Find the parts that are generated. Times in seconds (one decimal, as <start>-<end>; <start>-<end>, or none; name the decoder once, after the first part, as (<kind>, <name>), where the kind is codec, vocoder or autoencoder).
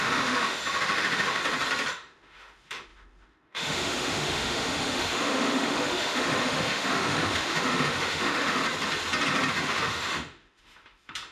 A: 0.0-1.4 (autoencoder, DAC-VAE); 1.9-8.6; 9.5-11.3